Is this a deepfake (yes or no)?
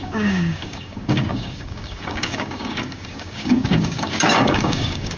yes